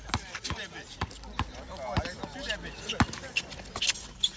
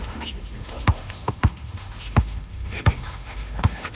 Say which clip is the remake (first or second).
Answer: second